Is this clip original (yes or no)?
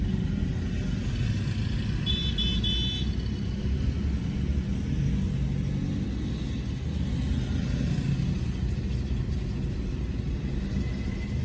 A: yes